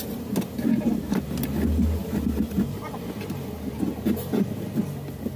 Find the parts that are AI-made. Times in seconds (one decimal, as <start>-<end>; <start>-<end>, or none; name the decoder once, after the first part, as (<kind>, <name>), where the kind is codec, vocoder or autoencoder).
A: none